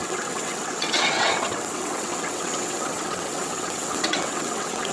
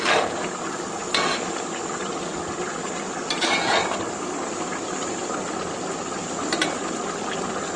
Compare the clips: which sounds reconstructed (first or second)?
first